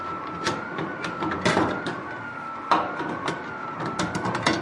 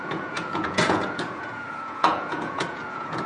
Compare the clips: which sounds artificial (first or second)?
second